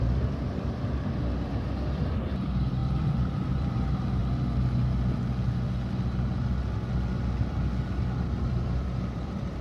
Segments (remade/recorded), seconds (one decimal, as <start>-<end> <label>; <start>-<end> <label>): 0.0-4.2 remade; 4.2-8.2 recorded; 8.2-9.6 remade